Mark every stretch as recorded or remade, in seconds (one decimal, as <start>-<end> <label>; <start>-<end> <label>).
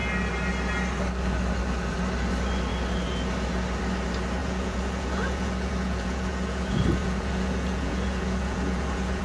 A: 0.0-4.4 recorded; 4.4-9.2 remade